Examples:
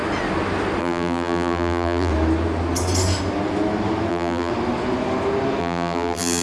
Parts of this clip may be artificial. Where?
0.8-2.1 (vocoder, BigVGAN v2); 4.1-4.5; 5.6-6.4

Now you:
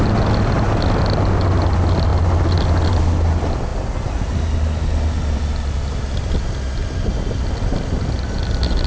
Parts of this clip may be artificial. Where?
none

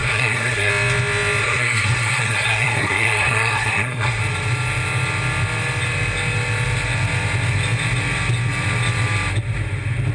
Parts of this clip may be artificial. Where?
0.0-0.7 (codec, SNAC); 1.4-4.2